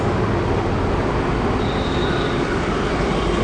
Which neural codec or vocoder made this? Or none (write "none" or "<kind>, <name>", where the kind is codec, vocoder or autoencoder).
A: none